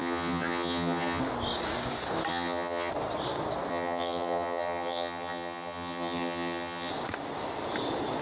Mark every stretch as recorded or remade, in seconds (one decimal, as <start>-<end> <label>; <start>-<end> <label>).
0.0-1.2 remade; 1.2-2.3 recorded; 2.3-2.9 remade; 2.9-3.7 recorded; 3.7-6.9 remade; 6.9-8.2 recorded